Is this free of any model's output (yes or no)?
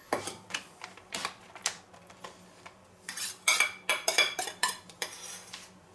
no